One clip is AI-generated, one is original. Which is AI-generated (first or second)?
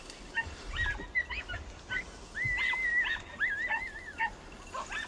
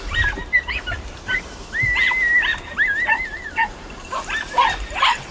second